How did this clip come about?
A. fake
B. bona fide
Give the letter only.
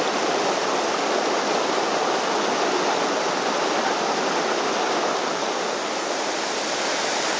B